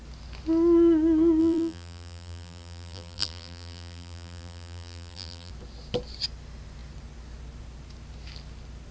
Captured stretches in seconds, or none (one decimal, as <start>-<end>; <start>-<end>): 0.0-1.4; 5.5-8.9